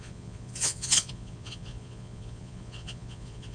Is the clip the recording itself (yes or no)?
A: no